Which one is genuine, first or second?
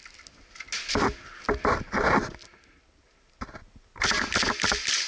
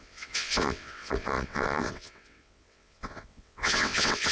first